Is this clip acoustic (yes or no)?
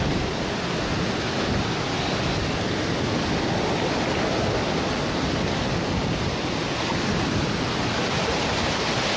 yes